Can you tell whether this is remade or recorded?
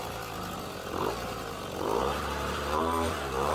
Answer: remade